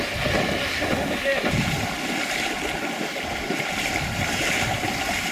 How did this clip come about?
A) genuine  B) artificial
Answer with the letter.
A